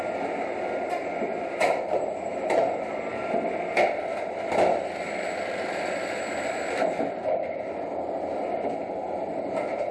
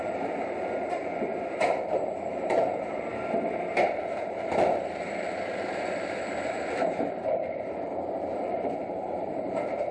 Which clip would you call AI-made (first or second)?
second